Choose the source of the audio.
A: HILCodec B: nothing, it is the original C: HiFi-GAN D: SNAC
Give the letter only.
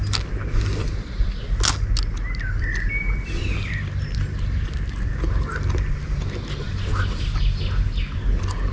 B